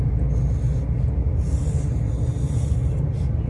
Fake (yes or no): no